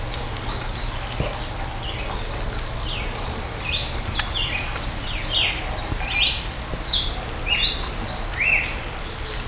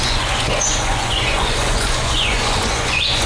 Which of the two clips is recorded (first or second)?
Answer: first